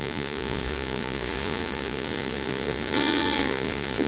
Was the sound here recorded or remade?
remade